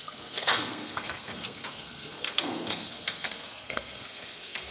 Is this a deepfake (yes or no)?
yes